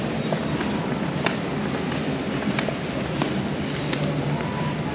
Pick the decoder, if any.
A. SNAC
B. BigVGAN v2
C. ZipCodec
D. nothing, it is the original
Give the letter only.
D